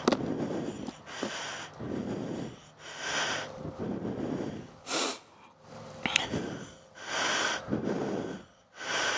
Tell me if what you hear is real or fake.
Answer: real